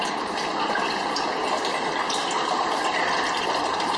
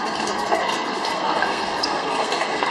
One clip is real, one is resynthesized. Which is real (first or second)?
first